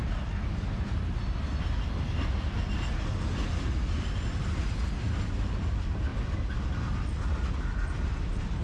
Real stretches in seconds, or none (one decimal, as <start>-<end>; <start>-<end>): 0.0-8.6